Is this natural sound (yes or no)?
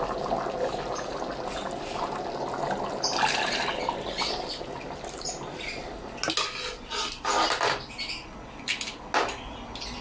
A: yes